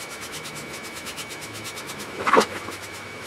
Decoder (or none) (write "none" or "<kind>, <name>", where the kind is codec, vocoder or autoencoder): autoencoder, DAC-VAE